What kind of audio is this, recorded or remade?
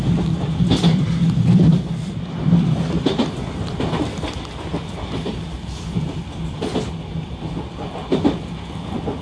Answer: remade